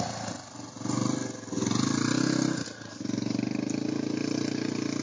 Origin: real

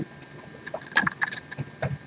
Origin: real